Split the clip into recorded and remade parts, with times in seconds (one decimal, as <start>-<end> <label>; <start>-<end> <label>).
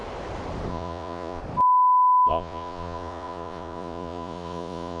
0.0-0.7 recorded; 0.7-1.4 remade; 1.4-2.3 recorded; 2.3-5.0 remade